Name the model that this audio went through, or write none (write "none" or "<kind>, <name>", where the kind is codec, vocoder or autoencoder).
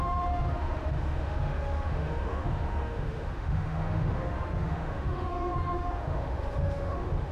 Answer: autoencoder, DAC-VAE